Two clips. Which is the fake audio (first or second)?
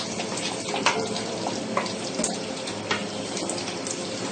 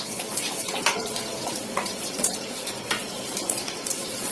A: second